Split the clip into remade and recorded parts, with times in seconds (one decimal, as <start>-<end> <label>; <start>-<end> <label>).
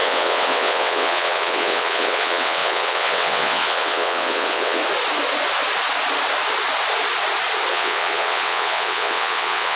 0.0-4.8 remade; 4.8-7.7 recorded; 7.7-9.8 remade